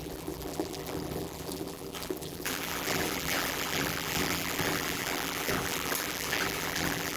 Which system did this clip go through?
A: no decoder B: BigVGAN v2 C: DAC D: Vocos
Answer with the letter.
B